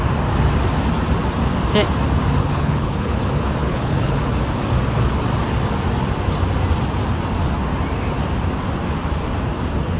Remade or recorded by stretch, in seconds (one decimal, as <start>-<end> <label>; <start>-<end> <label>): 0.0-2.4 recorded; 2.4-3.2 remade; 3.2-3.6 recorded; 3.6-4.2 remade; 4.2-10.0 recorded